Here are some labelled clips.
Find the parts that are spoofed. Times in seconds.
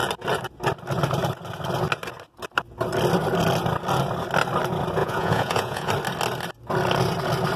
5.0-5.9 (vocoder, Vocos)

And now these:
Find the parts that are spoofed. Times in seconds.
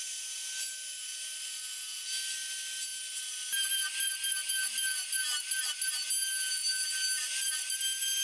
none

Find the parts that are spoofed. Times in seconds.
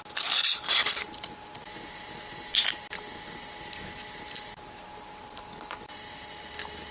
none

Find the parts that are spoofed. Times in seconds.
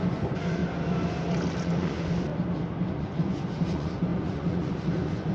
0.0-0.6 (vocoder, Vocos); 1.6-2.3; 2.9-5.3